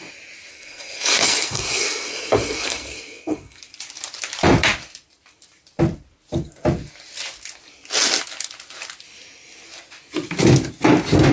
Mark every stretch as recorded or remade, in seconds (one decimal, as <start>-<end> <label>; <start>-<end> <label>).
0.0-0.5 recorded; 0.5-3.6 remade; 3.6-11.3 recorded